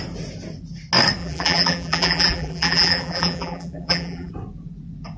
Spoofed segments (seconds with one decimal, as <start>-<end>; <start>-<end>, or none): 1.2-4.3